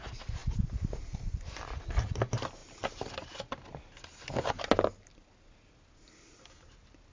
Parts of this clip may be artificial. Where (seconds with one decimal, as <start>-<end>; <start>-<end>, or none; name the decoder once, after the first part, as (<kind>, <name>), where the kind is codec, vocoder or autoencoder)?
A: none

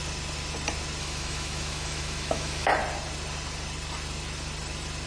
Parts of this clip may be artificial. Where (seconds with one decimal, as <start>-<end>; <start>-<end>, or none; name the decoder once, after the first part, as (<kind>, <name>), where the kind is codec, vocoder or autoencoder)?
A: 1.0-2.7 (autoencoder, DAC-VAE)

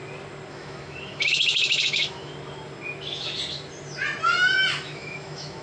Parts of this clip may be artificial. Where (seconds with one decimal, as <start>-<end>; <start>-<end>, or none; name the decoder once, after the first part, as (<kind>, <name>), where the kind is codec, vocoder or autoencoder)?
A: 0.5-2.3 (autoencoder, DAC-VAE); 4.8-5.6

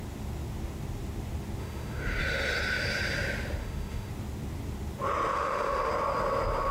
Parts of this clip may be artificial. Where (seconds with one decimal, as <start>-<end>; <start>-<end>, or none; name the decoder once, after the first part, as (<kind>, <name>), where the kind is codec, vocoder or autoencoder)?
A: 1.6-2.2 (autoencoder, DAC-VAE); 3.6-4.1; 5.3-5.9

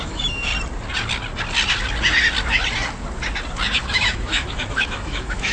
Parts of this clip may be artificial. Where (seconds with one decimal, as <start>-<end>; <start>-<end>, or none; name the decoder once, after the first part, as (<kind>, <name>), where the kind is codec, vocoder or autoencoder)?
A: 0.0-0.5 (autoencoder, DAC-VAE); 3.8-5.5

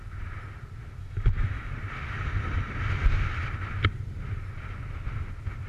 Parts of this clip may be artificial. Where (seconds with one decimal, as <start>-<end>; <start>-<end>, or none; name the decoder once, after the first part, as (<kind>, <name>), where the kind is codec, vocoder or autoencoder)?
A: 1.0-1.7 (autoencoder, DAC-VAE)